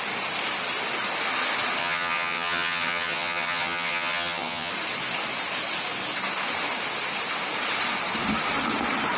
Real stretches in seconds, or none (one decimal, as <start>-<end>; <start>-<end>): 0.0-1.8; 4.7-9.2